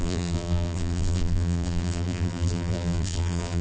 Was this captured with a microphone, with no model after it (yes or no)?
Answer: no